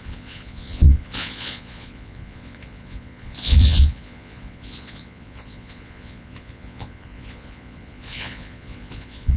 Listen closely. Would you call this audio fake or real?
fake